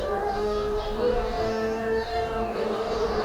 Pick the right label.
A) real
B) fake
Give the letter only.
B